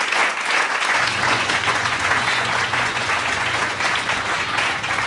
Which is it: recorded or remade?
remade